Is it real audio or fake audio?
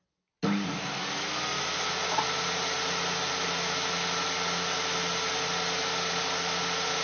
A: real